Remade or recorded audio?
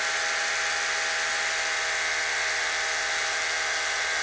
recorded